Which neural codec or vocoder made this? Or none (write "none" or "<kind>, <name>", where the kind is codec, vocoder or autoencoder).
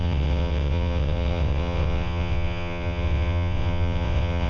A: vocoder, WaveNeXt